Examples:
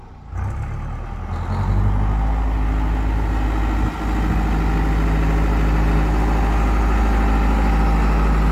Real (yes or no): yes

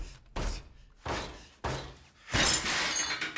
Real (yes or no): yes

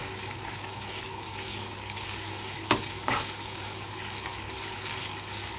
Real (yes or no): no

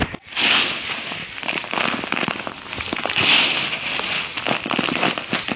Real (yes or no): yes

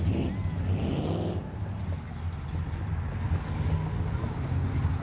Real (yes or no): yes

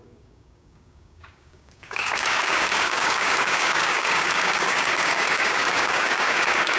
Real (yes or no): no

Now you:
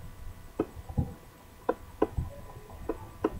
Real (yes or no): yes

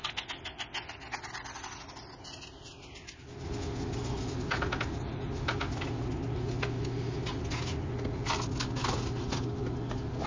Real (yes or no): yes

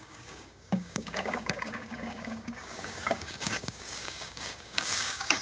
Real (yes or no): no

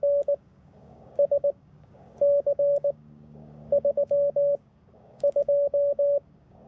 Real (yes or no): no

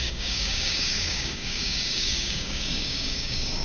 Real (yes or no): no